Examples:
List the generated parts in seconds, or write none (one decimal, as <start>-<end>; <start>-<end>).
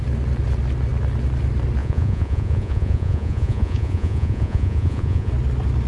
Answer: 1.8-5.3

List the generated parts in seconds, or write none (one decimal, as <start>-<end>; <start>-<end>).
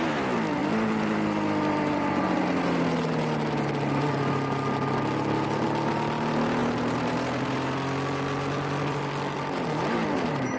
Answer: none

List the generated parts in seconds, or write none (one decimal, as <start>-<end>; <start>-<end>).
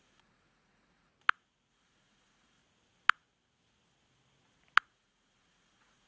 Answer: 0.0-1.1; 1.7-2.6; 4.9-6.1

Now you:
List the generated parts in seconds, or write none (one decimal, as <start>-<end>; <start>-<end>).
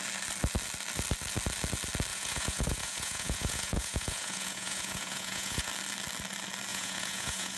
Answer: 2.1-5.7; 6.7-7.6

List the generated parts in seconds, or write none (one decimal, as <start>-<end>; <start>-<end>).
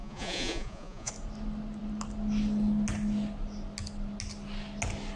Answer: 0.0-1.1